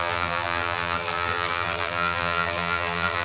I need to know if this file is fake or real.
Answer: fake